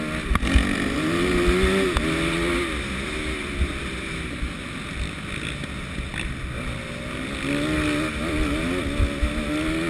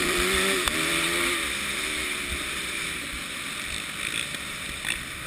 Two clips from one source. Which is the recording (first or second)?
first